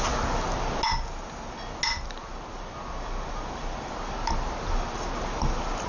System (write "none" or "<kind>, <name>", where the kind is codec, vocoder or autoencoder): none